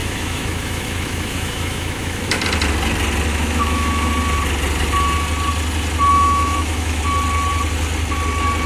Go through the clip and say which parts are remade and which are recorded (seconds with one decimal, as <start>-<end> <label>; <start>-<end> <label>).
0.0-2.4 remade; 2.4-3.3 recorded; 3.3-4.1 remade; 4.1-6.1 recorded; 6.1-7.0 remade; 7.0-8.7 recorded